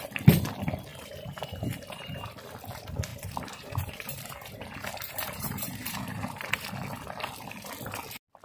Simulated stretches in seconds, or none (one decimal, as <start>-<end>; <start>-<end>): 0.9-2.3; 3.1-6.5